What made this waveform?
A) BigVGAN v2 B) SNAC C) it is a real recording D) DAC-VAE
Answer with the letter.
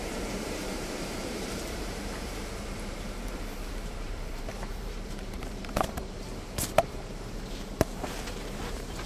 A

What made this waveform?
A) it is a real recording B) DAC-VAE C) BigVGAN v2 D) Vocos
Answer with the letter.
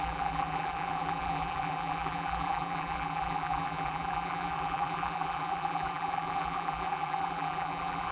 C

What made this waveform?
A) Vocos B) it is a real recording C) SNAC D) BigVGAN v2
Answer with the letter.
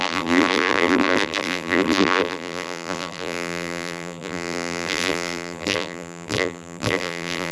D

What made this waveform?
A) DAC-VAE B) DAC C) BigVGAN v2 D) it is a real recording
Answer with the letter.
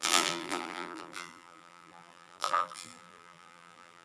C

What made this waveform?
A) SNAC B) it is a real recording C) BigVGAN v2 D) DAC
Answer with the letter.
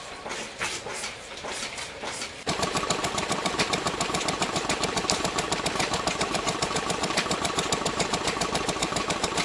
C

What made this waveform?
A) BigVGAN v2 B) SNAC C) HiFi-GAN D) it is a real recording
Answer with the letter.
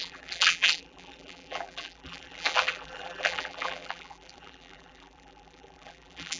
A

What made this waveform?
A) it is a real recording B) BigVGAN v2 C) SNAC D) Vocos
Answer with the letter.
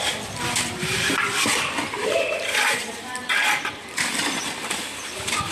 B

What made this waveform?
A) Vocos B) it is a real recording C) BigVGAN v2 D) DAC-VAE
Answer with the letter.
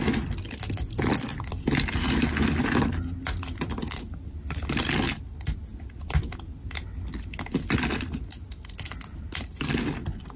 B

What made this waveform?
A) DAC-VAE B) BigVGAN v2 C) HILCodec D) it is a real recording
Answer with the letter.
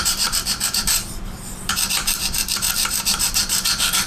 B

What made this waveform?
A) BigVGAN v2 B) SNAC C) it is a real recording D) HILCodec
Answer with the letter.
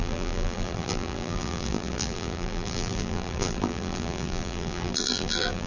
A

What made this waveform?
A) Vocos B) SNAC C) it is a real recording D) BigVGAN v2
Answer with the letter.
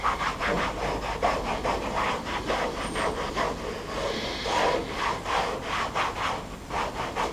C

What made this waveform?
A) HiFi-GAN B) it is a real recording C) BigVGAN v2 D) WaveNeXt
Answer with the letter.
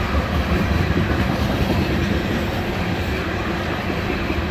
C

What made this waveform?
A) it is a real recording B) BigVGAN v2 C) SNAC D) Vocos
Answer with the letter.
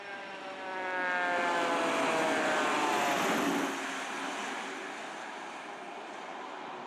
A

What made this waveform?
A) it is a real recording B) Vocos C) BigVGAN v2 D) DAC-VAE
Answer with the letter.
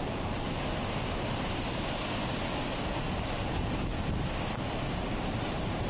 A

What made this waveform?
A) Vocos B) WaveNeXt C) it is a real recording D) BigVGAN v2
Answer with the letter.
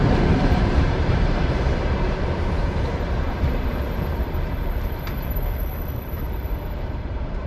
D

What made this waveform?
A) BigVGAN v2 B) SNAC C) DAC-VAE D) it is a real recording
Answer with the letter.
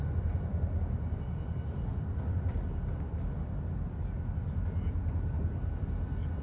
D